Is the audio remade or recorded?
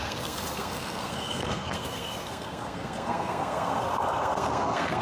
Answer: remade